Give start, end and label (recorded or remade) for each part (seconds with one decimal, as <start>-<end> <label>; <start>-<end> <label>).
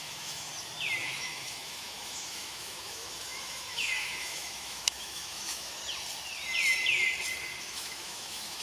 0.0-0.5 remade; 0.5-1.0 recorded; 1.0-5.8 remade; 5.8-7.6 recorded; 7.6-8.6 remade